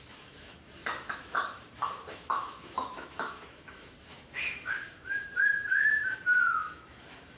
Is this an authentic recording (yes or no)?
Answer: no